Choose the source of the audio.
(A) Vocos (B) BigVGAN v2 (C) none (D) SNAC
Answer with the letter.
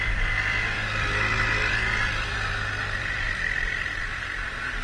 B